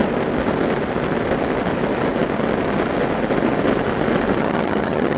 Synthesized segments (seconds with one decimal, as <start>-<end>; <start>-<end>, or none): 4.4-5.2